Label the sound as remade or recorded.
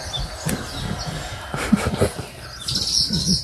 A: recorded